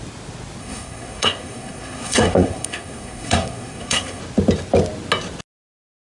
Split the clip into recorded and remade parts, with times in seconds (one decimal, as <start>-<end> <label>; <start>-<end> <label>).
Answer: 0.0-0.6 recorded; 0.6-4.2 remade; 4.2-6.1 recorded